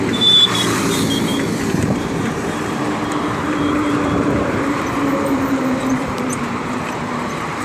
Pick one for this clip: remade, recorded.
remade